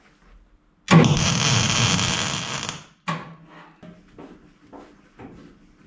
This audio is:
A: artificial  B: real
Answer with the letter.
B